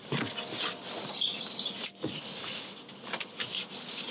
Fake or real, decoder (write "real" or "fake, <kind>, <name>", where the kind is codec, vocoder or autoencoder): real